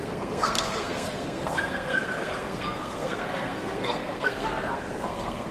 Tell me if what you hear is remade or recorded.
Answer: remade